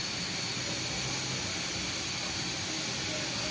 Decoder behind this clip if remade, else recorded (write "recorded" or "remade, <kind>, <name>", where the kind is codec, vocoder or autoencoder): recorded